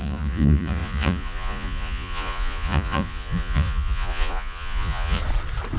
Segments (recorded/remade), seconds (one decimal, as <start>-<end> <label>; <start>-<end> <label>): 0.0-5.2 remade; 5.2-5.8 recorded